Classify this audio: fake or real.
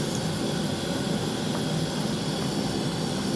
real